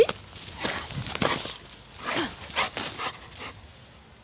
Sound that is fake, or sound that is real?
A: real